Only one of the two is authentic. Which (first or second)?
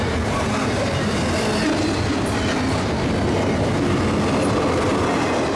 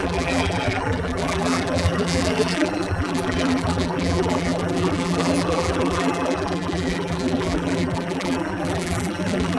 first